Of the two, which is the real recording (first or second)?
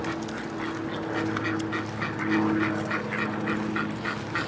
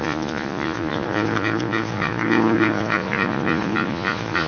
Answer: first